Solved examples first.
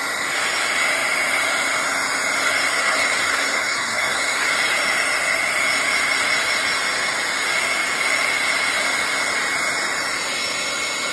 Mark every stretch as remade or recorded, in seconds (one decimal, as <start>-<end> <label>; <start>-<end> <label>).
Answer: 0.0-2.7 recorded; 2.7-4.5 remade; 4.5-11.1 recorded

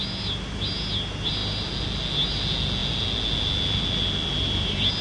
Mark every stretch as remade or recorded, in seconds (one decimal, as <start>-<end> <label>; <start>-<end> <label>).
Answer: 0.0-5.0 recorded

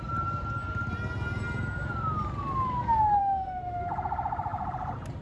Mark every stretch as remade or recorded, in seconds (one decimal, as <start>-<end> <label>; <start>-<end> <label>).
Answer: 0.0-3.2 recorded; 3.2-3.8 remade; 3.8-5.2 recorded

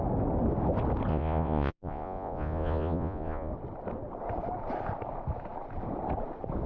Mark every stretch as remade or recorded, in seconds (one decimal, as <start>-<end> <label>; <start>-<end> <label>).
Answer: 0.0-1.1 recorded; 1.1-3.5 remade; 3.5-6.7 recorded

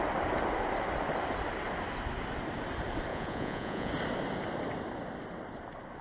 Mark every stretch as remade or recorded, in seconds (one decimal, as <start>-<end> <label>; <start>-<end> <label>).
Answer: 0.0-3.1 recorded; 3.1-3.9 remade; 3.9-6.0 recorded

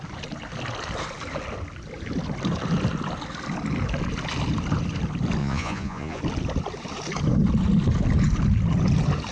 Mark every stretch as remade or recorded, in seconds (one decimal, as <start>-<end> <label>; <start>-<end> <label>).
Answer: 0.0-5.4 recorded; 5.4-6.2 remade; 6.2-9.3 recorded

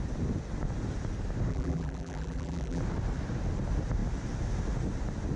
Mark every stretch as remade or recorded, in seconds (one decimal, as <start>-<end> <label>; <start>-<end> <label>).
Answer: 0.0-1.5 recorded; 1.5-2.8 remade; 2.8-5.4 recorded

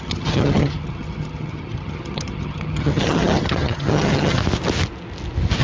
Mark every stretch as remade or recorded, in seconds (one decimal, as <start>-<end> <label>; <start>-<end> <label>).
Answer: 0.0-4.4 remade; 4.4-5.6 recorded